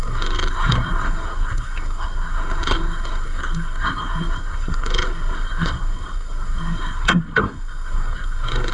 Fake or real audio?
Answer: fake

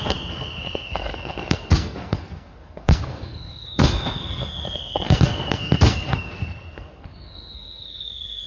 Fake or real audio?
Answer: fake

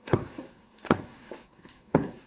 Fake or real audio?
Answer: fake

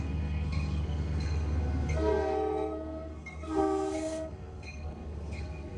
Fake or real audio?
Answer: fake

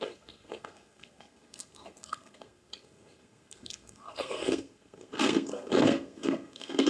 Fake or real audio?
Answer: fake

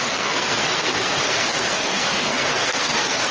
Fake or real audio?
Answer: fake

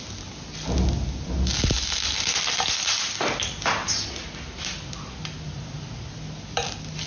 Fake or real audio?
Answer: real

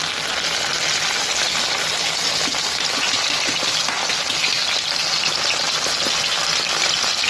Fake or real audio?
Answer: real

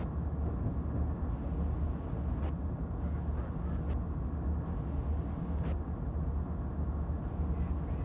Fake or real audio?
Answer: real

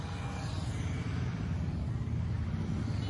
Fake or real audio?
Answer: real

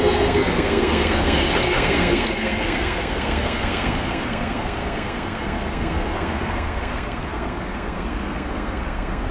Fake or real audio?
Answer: fake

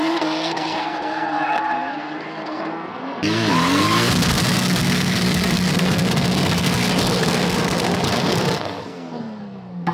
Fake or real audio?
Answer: fake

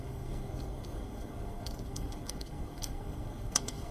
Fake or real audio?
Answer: fake